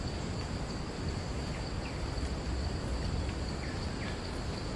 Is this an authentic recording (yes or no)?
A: yes